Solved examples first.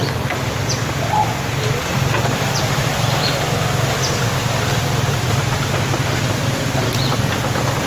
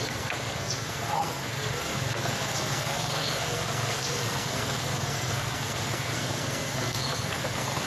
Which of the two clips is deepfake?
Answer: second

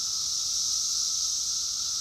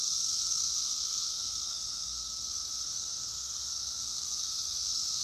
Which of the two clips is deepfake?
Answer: second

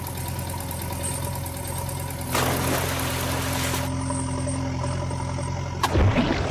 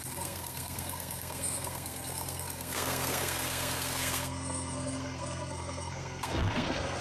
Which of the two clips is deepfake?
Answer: second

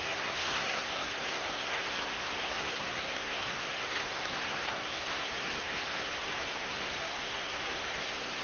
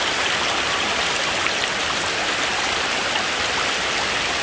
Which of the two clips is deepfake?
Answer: first